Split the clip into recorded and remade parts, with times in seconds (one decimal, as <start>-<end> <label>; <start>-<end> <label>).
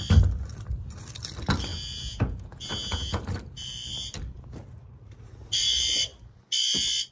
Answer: 0.0-1.7 recorded; 1.7-3.2 remade; 3.2-7.1 recorded